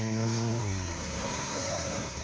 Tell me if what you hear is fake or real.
fake